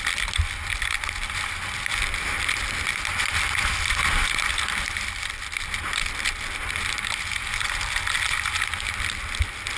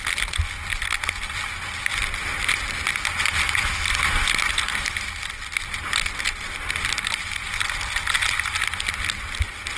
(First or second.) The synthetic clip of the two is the first